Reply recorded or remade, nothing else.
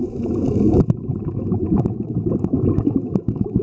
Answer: remade